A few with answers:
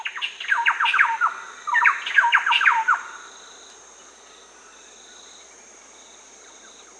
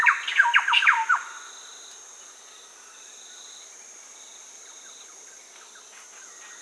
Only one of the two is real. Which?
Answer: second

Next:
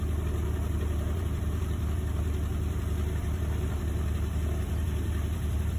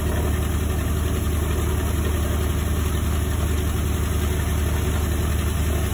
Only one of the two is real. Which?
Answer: second